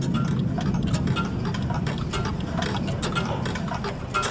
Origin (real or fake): real